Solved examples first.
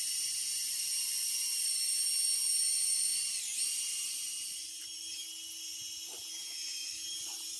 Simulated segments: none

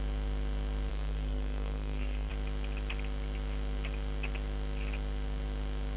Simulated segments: 0.9-2.3 (codec, SNAC)

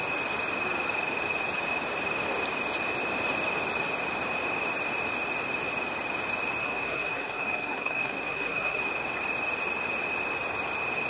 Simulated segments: 6.6-8.8 (codec, SNAC)

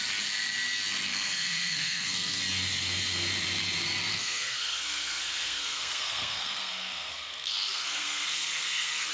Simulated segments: 1.1-2.4 (codec, SNAC); 4.1-9.1

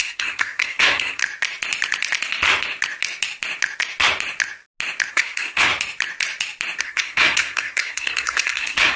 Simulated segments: 0.0-1.2 (codec, SNAC); 5.1-5.7; 6.8-9.0